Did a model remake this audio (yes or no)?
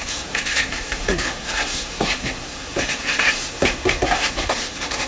yes